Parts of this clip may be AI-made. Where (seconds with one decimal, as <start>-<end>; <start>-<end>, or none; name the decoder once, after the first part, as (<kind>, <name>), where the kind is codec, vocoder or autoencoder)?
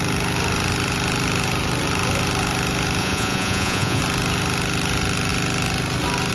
3.0-4.0 (vocoder, Vocos)